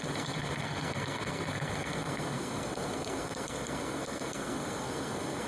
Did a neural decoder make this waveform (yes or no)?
yes